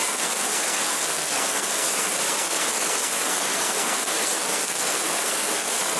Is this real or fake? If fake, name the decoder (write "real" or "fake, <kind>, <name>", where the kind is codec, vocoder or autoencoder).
fake, codec, SNAC